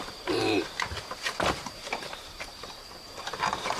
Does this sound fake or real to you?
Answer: fake